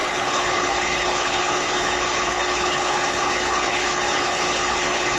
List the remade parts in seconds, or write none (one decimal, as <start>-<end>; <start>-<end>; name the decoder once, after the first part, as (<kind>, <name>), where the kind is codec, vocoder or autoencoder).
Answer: 0.0-5.2 (codec, HILCodec)